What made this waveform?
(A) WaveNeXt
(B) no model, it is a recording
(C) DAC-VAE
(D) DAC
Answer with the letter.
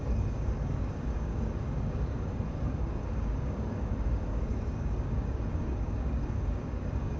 D